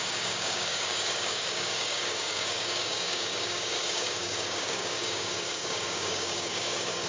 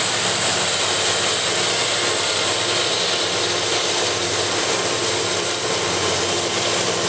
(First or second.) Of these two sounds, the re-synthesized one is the first